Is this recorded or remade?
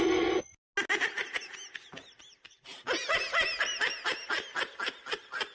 recorded